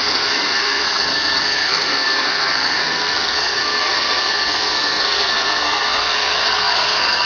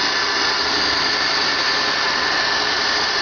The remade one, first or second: first